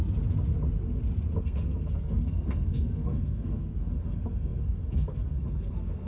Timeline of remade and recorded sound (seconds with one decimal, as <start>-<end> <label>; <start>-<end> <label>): 0.0-1.4 recorded; 1.4-6.1 remade